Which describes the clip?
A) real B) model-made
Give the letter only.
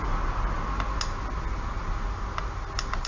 A